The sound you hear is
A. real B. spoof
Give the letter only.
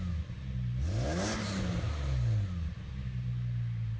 A